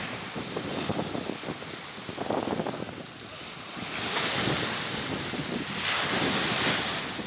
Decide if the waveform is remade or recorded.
recorded